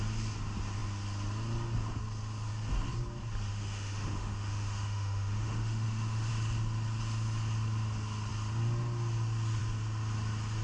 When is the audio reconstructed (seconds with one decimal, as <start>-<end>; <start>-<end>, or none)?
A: 3.5-6.3

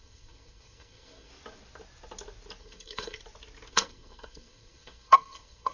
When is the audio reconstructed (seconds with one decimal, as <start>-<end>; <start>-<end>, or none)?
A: 0.0-1.3; 2.6-3.2; 3.7-5.7